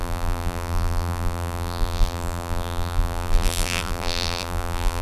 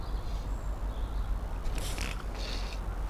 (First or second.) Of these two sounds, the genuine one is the second